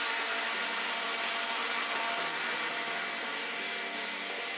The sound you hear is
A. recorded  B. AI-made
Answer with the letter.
A